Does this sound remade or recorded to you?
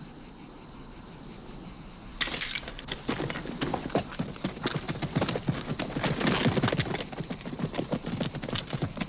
recorded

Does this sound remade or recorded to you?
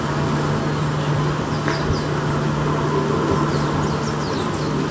recorded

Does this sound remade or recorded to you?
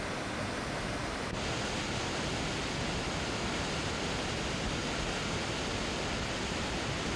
recorded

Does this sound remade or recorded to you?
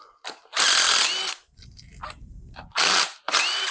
recorded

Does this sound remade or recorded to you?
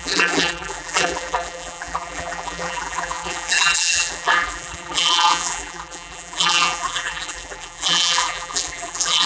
remade